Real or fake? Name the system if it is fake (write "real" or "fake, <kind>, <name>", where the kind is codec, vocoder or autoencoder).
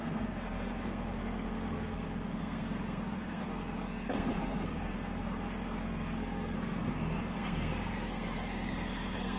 fake, codec, SNAC